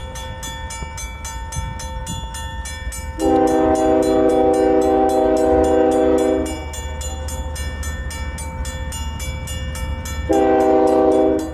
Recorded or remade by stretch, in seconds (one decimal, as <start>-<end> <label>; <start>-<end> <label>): 0.0-11.5 recorded